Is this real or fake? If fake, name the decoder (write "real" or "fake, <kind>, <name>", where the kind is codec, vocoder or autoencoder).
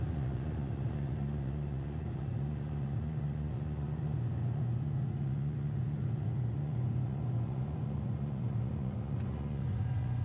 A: fake, vocoder, Vocos